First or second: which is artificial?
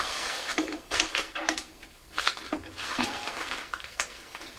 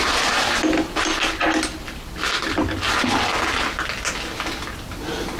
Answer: first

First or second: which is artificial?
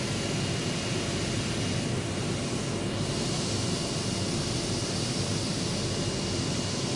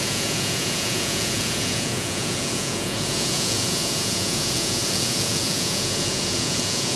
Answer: second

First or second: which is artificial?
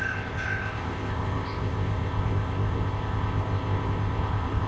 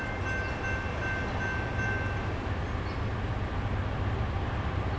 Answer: first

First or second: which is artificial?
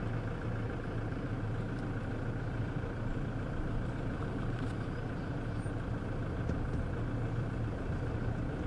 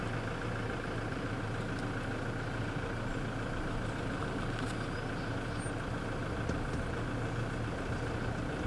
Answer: first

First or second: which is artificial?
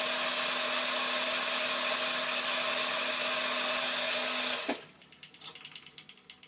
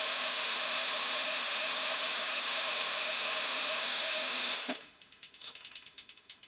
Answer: second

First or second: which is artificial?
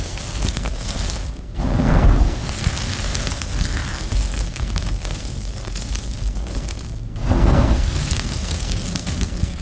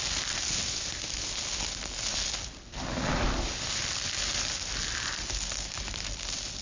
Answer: first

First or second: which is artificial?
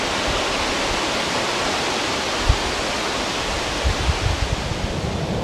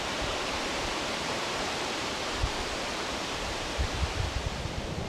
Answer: second